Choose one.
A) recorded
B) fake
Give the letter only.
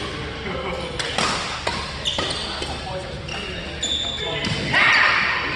A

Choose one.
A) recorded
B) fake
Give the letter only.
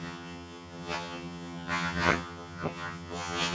B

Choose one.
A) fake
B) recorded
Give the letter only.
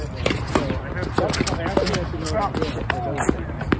B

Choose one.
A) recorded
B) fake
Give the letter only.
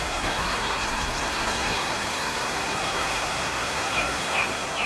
B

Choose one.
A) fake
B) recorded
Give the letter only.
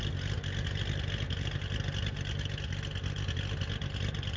B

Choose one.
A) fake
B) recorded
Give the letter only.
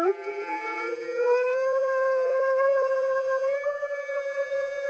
A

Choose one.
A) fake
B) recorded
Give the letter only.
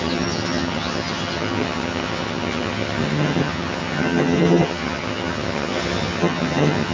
A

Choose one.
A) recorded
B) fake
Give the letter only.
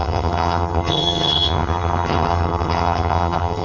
B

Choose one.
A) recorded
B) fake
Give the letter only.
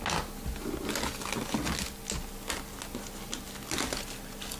A